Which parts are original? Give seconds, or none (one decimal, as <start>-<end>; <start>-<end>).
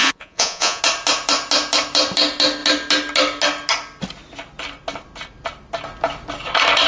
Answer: 0.8-6.9